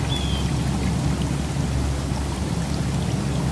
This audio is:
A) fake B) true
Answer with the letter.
B